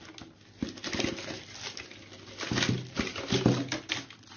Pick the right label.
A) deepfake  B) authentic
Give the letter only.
B